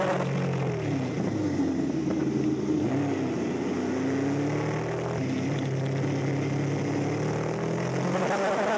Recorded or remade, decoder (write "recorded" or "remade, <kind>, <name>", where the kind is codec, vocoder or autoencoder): recorded